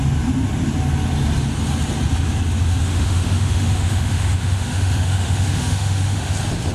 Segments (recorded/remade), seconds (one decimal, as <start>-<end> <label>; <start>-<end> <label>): 0.0-2.8 recorded; 2.8-6.3 remade; 6.3-6.7 recorded